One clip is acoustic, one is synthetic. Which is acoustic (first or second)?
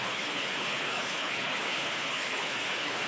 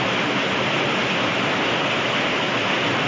second